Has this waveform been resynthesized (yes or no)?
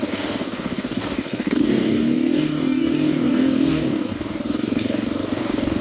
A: yes